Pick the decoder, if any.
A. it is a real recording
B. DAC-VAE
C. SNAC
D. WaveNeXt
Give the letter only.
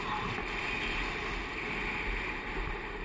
A